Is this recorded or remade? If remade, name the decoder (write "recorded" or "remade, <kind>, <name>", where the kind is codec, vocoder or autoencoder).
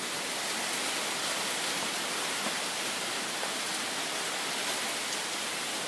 recorded